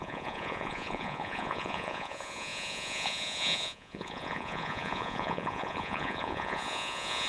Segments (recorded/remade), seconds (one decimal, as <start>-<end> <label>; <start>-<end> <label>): 0.0-7.3 remade